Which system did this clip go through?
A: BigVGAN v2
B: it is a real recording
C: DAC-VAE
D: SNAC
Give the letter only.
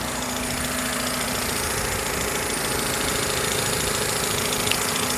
B